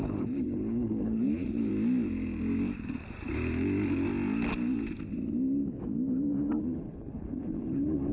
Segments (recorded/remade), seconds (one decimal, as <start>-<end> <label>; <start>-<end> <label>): 0.0-1.7 remade; 1.7-6.6 recorded; 6.6-8.1 remade